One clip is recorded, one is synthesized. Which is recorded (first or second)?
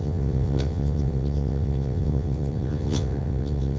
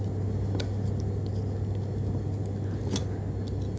second